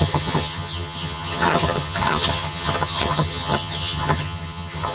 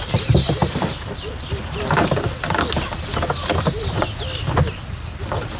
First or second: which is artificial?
first